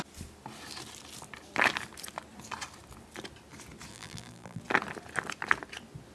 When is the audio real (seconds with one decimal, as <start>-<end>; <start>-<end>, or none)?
0.0-3.9; 4.6-6.1